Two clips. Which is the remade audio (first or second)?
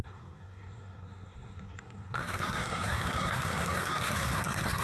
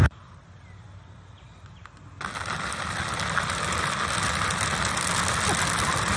first